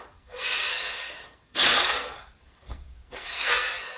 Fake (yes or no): yes